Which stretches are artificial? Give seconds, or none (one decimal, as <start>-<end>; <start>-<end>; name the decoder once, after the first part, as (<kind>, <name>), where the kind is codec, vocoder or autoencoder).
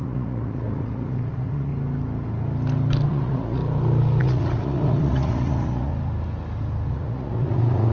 0.0-1.7 (vocoder, Vocos); 3.1-3.6; 4.2-5.9; 6.9-7.9